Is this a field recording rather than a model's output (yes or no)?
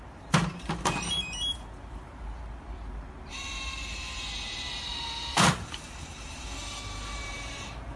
no